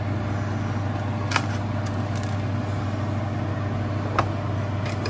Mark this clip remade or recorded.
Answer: recorded